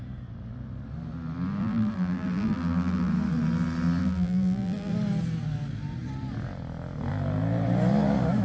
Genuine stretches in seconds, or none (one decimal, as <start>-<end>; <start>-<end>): 0.0-1.6; 3.1-4.0; 4.9-8.4